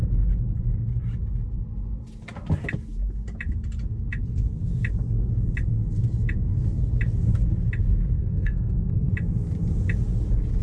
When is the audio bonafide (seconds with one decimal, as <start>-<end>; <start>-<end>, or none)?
0.0-8.2; 9.1-10.6